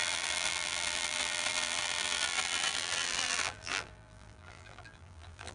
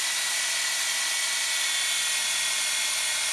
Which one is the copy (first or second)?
first